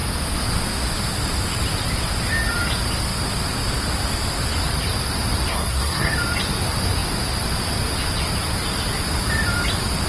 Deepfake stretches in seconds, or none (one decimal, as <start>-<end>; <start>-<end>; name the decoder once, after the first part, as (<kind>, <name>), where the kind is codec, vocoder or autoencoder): 5.5-6.1 (codec, SNAC)